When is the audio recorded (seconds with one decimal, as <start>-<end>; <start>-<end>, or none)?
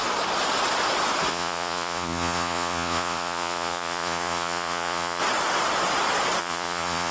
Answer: 0.0-1.3; 5.2-6.4